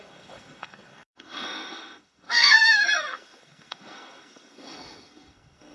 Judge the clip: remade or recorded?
remade